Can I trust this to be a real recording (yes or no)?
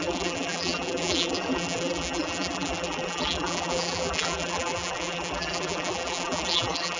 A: no